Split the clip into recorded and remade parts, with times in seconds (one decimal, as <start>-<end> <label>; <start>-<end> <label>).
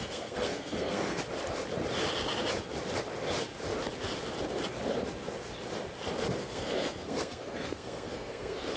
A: 0.0-1.2 remade; 1.2-6.4 recorded; 6.4-8.8 remade